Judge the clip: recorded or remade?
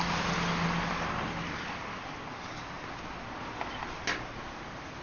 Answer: recorded